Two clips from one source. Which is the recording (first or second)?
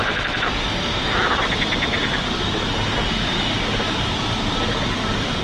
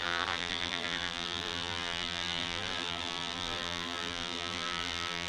first